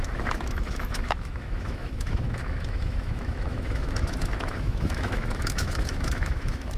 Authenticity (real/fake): fake